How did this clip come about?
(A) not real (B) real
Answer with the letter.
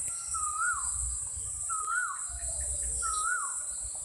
A